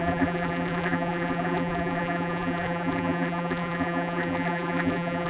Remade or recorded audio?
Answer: remade